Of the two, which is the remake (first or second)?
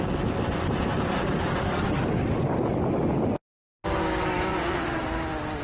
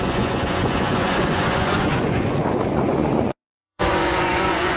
second